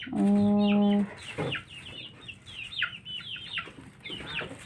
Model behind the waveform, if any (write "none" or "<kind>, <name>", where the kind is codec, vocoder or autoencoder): none